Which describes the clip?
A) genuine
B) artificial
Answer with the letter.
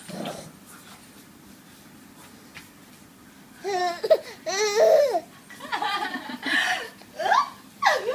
A